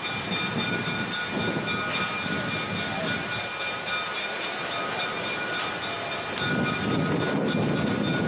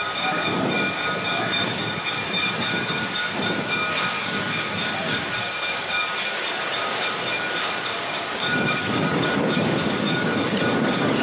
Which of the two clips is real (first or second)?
first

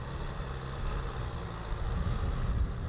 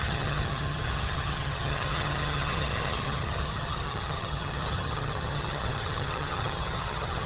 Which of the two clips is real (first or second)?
first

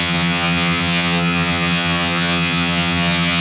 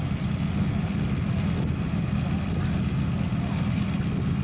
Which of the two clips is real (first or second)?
second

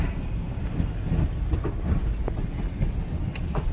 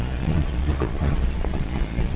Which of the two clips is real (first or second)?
first